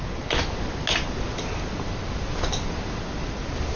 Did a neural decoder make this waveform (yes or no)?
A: no